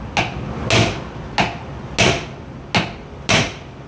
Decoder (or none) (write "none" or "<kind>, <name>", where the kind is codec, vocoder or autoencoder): none